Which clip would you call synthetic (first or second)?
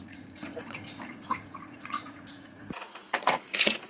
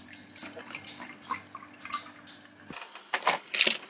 first